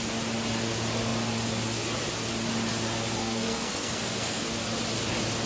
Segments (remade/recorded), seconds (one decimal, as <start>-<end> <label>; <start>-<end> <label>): 0.0-3.2 recorded; 3.2-4.4 remade; 4.4-5.5 recorded

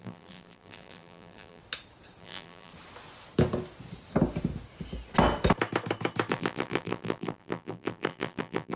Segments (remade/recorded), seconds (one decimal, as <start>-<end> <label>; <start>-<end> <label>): 0.0-1.6 remade; 1.6-2.2 recorded; 2.2-2.7 remade; 2.7-6.3 recorded; 6.3-8.8 remade

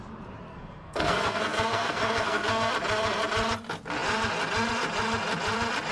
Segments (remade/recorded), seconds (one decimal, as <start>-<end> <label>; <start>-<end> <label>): 0.0-0.5 recorded; 0.5-2.7 remade; 2.7-5.9 recorded

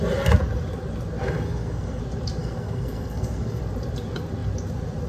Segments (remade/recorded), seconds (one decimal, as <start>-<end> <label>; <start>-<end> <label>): 0.0-1.2 recorded; 1.2-2.0 remade; 2.0-2.4 recorded; 2.4-3.6 remade; 3.6-5.1 recorded

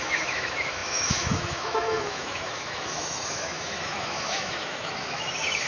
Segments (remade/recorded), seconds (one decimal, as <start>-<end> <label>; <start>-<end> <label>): 0.0-5.7 remade

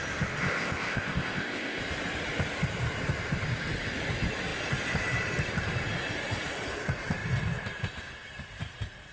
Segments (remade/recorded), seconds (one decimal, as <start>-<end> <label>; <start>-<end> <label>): 0.0-0.4 recorded; 0.4-1.8 remade; 1.8-9.1 recorded

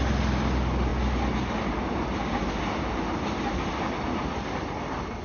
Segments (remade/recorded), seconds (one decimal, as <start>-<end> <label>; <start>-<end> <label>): 0.0-5.2 recorded